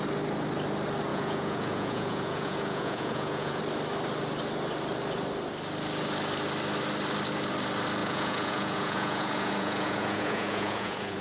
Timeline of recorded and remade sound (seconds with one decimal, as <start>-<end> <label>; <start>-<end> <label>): 0.0-1.1 recorded; 1.1-3.6 remade; 3.6-8.0 recorded; 8.0-11.2 remade